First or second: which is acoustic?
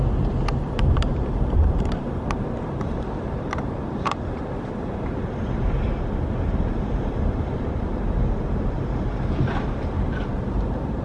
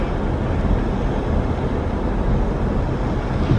second